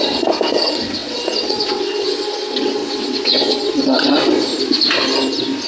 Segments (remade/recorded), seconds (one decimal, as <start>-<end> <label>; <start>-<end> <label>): 0.0-4.5 remade; 4.5-5.7 recorded